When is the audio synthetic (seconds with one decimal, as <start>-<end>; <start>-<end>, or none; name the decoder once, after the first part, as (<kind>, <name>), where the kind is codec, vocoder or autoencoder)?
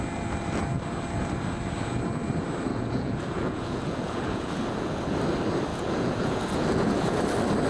2.7-5.0 (vocoder, Vocos); 5.7-7.2